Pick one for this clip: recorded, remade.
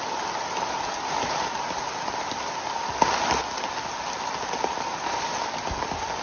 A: recorded